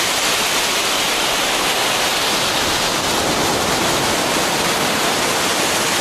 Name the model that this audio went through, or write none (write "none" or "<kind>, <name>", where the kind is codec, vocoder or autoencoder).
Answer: none